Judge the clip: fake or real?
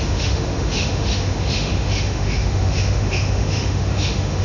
fake